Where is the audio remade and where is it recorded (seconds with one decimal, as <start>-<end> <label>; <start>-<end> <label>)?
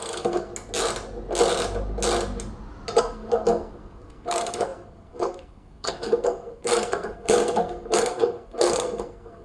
0.0-0.5 remade; 0.5-3.0 recorded; 3.0-9.4 remade